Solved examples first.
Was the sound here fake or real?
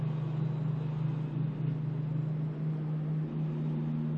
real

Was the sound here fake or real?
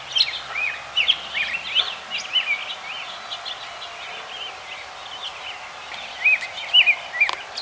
real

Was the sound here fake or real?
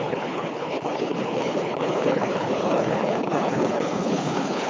fake